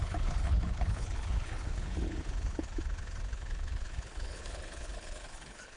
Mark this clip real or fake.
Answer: fake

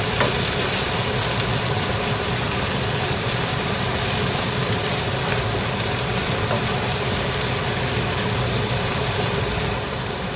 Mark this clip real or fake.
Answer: real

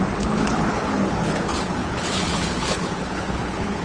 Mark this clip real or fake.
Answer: fake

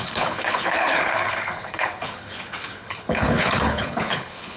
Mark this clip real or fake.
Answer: fake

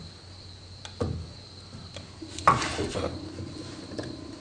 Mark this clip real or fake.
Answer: real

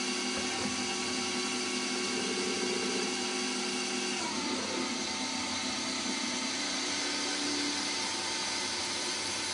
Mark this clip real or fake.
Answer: real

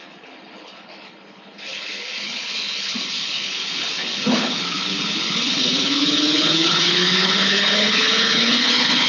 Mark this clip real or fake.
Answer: fake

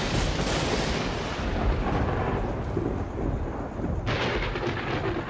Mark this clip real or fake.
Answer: real